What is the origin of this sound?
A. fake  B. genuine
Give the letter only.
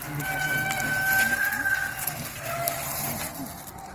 B